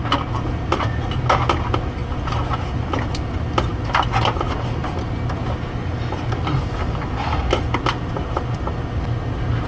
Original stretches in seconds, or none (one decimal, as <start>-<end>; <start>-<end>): 0.0-9.7

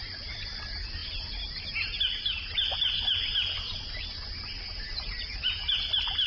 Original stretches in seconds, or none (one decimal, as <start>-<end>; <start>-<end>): 0.0-6.3

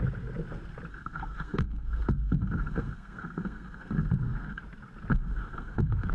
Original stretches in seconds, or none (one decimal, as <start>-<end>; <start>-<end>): 0.0-0.9; 4.6-5.1

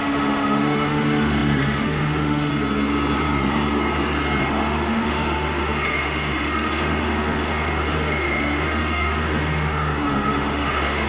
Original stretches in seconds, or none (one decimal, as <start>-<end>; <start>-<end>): 2.5-4.4

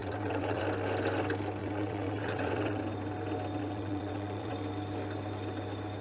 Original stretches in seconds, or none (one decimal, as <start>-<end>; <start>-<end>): 0.6-1.6; 2.8-3.6; 4.5-6.0

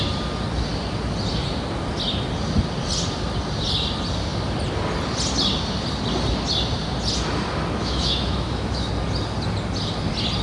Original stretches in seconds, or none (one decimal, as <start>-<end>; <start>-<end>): 0.0-7.8; 8.9-10.4

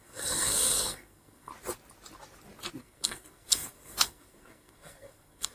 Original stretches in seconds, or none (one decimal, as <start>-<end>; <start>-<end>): 1.5-2.8

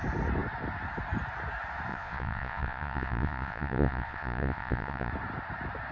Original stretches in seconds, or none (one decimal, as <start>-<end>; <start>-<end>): 0.0-1.9; 5.1-5.9